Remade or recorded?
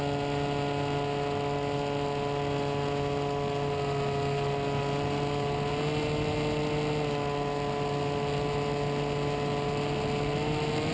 recorded